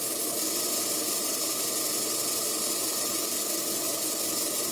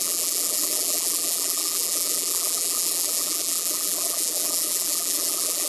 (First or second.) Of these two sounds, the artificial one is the second